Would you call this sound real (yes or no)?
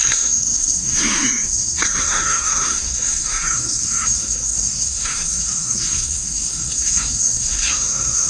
no